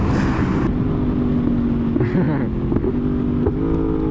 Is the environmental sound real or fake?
real